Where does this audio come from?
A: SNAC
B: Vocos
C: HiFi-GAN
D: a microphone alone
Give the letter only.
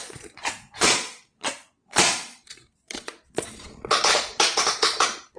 B